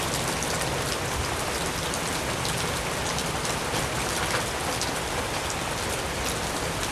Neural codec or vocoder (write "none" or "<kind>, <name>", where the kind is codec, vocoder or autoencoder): none